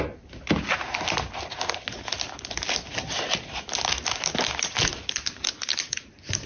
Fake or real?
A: real